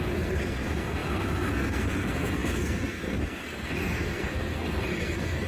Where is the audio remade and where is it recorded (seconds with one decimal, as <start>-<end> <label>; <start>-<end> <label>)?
0.0-5.5 remade